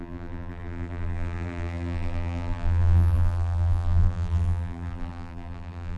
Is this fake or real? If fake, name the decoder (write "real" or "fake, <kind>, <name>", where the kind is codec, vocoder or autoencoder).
fake, vocoder, BigVGAN v2